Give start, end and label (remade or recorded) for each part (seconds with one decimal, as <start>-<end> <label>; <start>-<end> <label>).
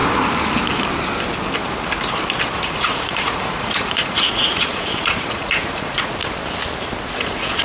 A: 0.0-2.5 recorded; 2.5-6.2 remade; 6.2-7.1 recorded; 7.1-7.6 remade